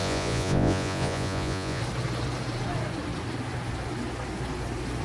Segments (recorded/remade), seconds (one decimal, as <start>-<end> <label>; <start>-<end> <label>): 0.0-1.8 remade; 1.8-5.0 recorded